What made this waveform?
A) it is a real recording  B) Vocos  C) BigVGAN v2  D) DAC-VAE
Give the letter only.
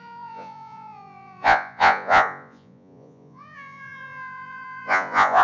B